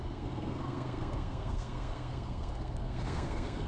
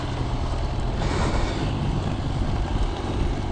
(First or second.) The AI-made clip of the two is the first